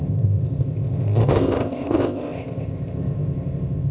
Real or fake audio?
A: fake